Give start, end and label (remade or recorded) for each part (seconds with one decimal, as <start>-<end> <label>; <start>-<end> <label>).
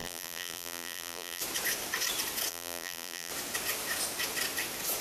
0.0-1.4 remade; 1.4-2.5 recorded; 2.5-3.3 remade; 3.3-5.0 recorded